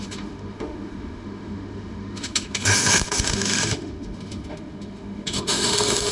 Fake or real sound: fake